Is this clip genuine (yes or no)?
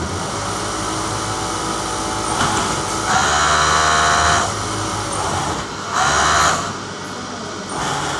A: yes